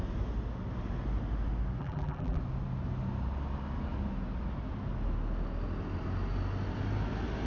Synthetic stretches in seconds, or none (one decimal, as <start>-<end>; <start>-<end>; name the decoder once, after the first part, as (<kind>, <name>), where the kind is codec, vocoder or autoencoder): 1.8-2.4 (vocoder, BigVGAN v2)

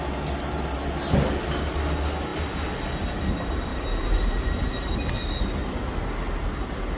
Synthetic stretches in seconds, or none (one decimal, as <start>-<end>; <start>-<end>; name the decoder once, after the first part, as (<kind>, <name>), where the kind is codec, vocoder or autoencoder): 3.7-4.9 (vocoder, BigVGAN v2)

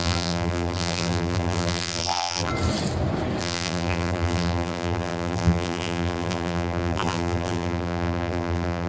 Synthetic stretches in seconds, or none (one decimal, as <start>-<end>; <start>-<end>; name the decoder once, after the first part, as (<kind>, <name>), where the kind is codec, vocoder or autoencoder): 0.0-2.5 (vocoder, BigVGAN v2); 3.4-8.9

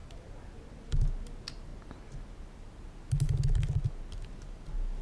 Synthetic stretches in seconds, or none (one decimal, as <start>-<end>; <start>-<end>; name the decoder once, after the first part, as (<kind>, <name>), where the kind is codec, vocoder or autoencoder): none

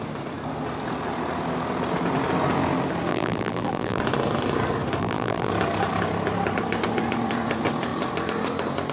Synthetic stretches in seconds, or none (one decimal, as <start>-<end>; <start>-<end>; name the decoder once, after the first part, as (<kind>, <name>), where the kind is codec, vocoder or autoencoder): 3.1-4.0 (vocoder, BigVGAN v2); 5.0-5.5